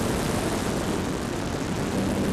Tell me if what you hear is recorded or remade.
recorded